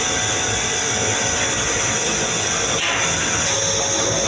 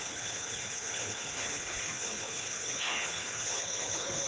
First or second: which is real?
first